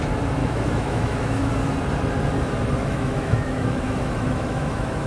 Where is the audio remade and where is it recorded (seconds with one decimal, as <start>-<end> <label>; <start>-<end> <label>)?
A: 0.0-0.4 recorded; 0.4-1.5 remade; 1.5-2.8 recorded; 2.8-5.1 remade